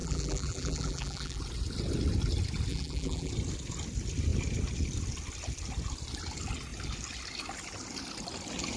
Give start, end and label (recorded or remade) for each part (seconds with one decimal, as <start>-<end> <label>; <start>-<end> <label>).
0.0-1.4 remade; 1.4-2.7 recorded; 2.7-3.3 remade; 3.3-8.8 recorded